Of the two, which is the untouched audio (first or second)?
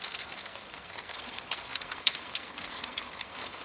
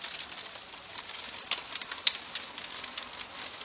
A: second